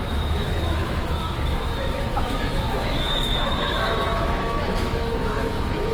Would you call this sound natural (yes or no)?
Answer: no